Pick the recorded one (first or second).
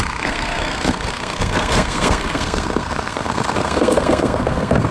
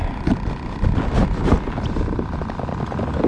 second